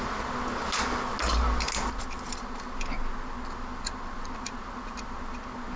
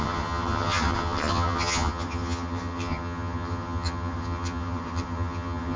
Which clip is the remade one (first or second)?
second